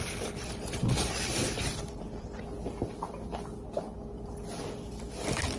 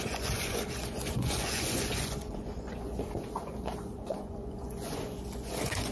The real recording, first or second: first